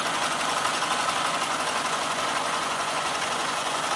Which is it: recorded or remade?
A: remade